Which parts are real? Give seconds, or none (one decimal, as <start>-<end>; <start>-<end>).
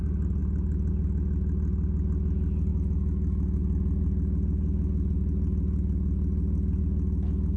0.0-7.6